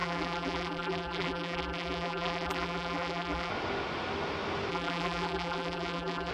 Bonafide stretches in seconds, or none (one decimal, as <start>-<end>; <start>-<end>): 3.5-4.7